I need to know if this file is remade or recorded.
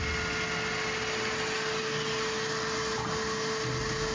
recorded